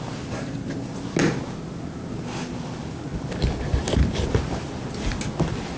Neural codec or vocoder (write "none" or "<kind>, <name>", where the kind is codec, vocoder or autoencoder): none